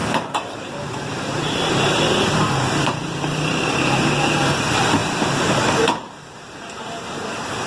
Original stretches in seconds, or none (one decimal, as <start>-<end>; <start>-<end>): 4.1-5.0; 6.8-7.7